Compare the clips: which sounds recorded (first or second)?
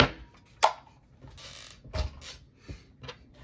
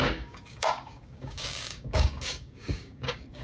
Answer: first